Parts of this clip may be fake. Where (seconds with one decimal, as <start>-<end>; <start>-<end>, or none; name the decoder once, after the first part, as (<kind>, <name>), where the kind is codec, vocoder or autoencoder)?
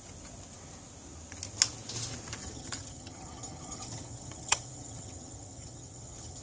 2.4-6.4 (vocoder, HiFi-GAN)